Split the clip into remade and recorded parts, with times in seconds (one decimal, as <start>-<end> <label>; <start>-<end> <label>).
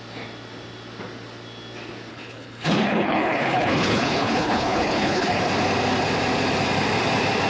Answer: 0.0-2.1 recorded; 2.1-5.4 remade; 5.4-7.5 recorded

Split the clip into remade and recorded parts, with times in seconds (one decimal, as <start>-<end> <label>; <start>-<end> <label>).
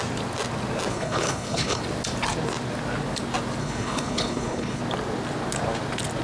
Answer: 0.0-0.9 recorded; 0.9-1.8 remade; 1.8-3.6 recorded; 3.6-4.8 remade; 4.8-6.2 recorded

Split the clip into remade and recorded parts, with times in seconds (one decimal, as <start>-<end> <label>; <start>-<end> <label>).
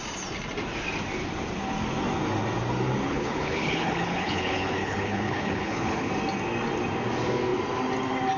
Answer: 0.0-3.1 recorded; 3.1-6.1 remade; 6.1-8.4 recorded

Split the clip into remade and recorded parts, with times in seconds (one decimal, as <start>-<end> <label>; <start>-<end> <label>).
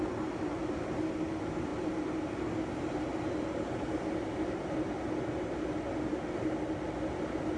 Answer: 0.0-7.6 recorded